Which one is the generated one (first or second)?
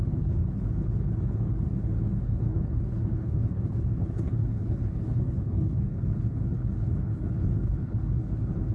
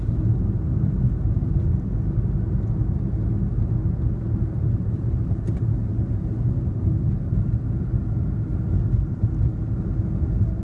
first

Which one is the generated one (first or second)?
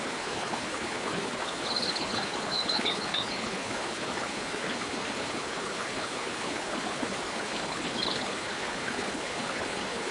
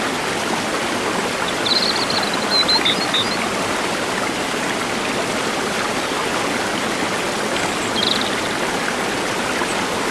first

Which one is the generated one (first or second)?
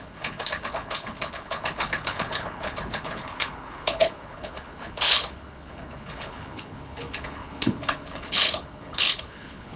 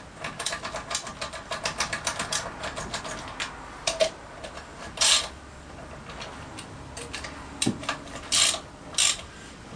first